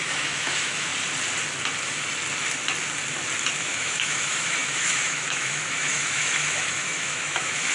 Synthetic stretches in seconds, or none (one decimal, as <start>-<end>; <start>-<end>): 0.0-0.9; 3.6-7.7